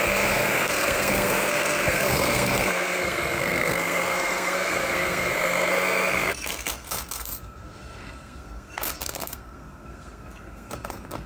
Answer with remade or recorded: remade